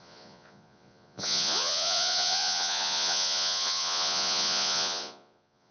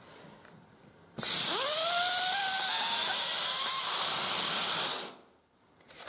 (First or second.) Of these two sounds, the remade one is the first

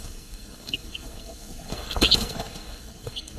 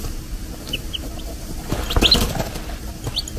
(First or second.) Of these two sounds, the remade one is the first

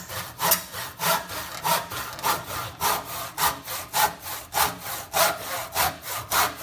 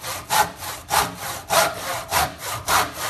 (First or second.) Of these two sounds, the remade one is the second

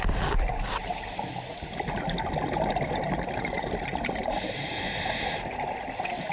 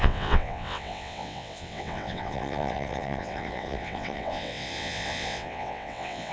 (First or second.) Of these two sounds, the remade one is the second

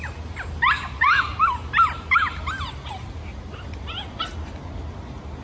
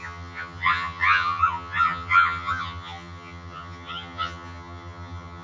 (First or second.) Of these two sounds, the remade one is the second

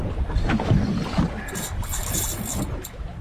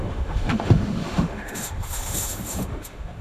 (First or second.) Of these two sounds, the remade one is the second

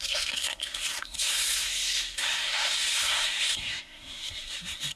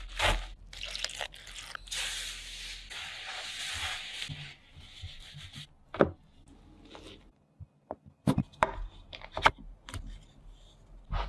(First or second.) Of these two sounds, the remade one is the first